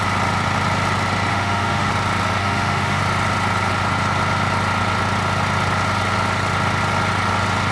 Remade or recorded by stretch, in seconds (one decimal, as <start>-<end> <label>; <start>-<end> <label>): 0.0-1.3 recorded; 1.3-1.9 remade; 1.9-2.4 recorded; 2.4-3.0 remade; 3.0-7.7 recorded